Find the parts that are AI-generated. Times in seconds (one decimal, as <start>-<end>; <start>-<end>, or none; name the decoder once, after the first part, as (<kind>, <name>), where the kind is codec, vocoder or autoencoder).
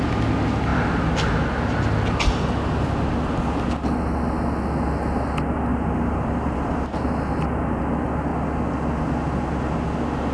5.7-7.8 (vocoder, BigVGAN v2)